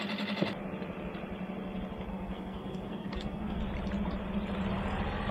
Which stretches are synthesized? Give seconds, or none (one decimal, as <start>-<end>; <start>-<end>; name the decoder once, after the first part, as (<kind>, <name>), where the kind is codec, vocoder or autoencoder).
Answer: 2.1-3.6 (codec, SNAC)